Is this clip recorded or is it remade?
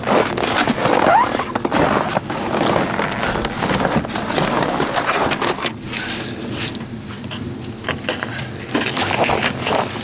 recorded